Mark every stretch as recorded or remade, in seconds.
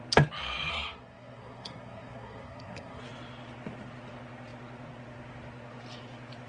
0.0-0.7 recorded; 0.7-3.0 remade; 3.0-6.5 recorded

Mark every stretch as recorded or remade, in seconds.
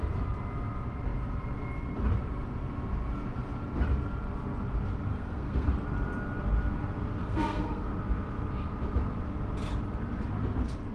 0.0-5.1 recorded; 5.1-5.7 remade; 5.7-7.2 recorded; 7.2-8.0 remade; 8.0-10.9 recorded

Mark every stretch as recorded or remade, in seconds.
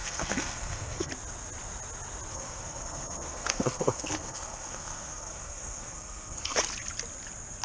0.0-1.1 remade; 1.1-2.3 recorded; 2.3-6.6 remade; 6.6-7.6 recorded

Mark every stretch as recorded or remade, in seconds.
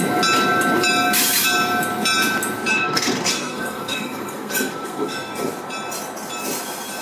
0.0-2.7 recorded; 2.7-5.5 remade; 5.5-7.0 recorded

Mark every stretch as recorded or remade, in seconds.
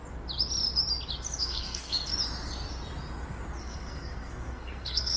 0.0-1.4 recorded; 1.4-2.1 remade; 2.1-3.6 recorded; 3.6-5.2 remade